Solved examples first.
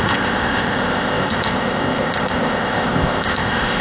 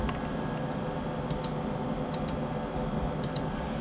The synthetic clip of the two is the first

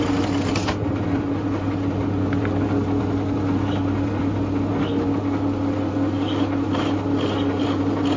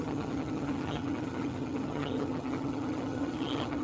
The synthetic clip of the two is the second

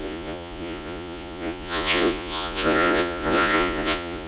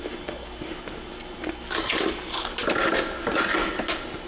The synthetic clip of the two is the first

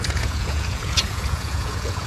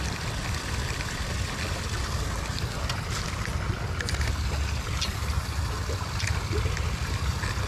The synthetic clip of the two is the first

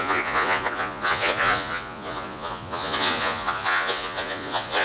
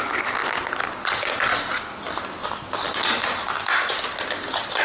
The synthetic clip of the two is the first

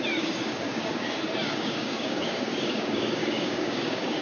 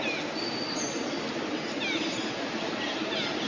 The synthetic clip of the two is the first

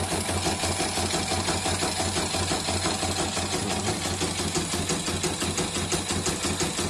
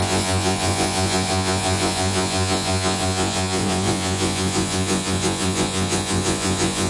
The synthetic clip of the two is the second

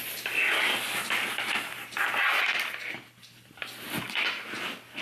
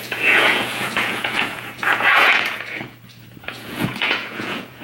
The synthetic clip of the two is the second